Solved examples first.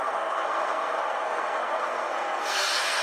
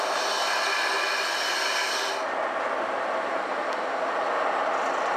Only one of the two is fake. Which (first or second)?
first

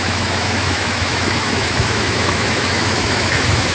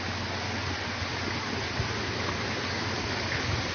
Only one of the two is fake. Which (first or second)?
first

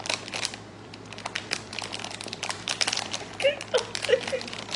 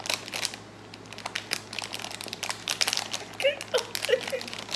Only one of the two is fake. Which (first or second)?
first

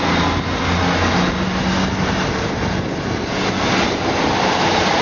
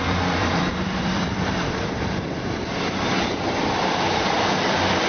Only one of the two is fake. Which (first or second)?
second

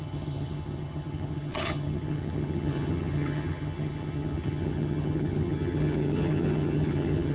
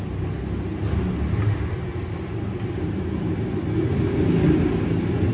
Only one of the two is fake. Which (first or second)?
first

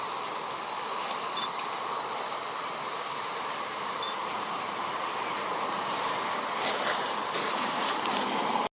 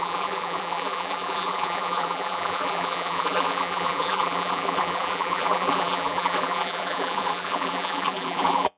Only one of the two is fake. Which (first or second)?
second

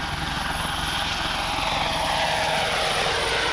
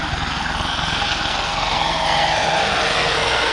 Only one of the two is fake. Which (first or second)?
second